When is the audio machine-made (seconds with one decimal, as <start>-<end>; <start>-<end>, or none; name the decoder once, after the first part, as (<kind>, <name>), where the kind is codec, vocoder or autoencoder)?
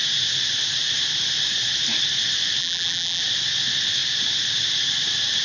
2.6-3.2 (vocoder, BigVGAN v2)